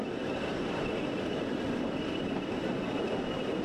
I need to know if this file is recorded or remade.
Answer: recorded